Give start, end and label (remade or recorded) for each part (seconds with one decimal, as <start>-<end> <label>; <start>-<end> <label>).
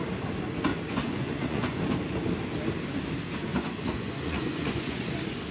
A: 0.0-0.7 recorded; 0.7-1.8 remade; 1.8-3.5 recorded; 3.5-5.1 remade; 5.1-5.5 recorded